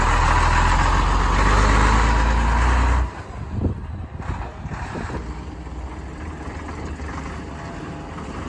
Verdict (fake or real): real